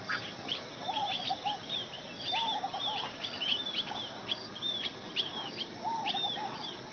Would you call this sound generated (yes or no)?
yes